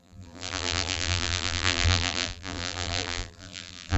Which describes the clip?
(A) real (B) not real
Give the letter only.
B